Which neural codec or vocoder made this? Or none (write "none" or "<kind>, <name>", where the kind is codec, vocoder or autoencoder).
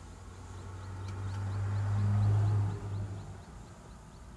none